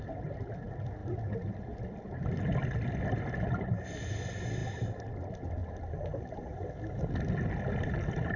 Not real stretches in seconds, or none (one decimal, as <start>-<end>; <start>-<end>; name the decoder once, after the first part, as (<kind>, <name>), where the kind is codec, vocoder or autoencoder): none